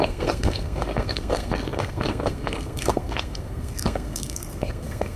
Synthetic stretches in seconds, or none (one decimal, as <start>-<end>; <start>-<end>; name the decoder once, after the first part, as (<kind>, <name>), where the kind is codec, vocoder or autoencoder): 0.0-5.2 (codec, SNAC)